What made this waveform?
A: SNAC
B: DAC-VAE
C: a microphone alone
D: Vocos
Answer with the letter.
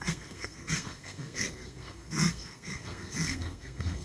A